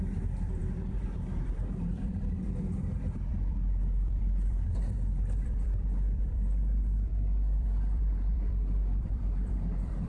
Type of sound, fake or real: fake